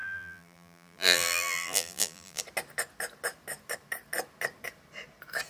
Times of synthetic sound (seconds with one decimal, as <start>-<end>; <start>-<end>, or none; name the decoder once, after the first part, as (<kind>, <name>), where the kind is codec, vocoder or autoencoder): 0.0-2.4 (vocoder, BigVGAN v2)